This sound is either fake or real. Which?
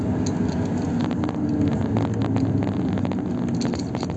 real